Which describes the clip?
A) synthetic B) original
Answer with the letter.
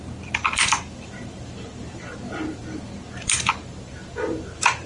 A